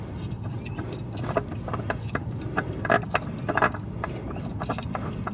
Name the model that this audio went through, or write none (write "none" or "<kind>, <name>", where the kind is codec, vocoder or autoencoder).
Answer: none